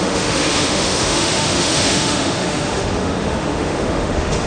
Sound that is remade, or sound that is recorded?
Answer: remade